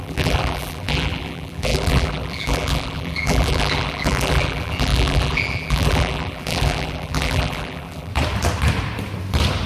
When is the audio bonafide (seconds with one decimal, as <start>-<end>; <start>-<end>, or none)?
8.1-9.7